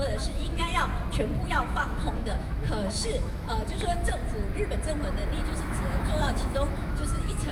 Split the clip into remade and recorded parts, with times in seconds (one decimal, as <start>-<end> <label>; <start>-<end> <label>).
0.0-0.9 remade; 0.9-1.5 recorded; 1.5-4.2 remade; 4.2-5.6 recorded; 5.6-7.5 remade